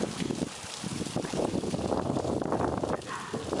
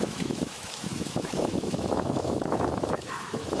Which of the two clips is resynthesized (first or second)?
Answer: second